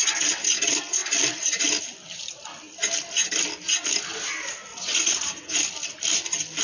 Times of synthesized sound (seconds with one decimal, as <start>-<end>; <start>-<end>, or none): 4.7-5.6